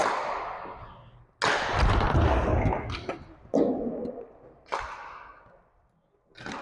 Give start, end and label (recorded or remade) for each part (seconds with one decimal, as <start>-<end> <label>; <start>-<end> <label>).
0.0-6.6 recorded

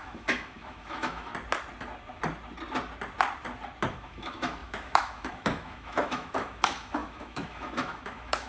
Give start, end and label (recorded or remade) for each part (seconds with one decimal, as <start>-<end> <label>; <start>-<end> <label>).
0.0-1.3 remade; 1.3-3.9 recorded; 3.9-8.5 remade

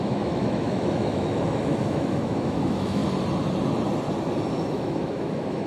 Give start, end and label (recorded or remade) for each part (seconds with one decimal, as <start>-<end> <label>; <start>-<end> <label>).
0.0-3.0 remade; 3.0-4.7 recorded; 4.7-5.7 remade

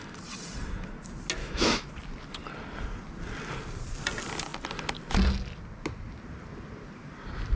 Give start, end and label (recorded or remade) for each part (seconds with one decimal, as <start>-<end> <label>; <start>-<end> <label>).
0.0-1.4 recorded; 1.4-1.9 remade; 1.9-7.6 recorded

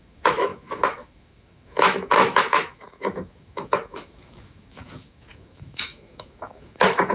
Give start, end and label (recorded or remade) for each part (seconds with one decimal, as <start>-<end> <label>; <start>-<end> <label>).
0.0-7.1 remade